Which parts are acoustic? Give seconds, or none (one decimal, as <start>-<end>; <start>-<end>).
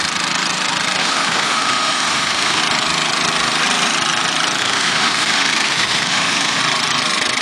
0.0-1.0; 2.6-4.6; 6.6-7.4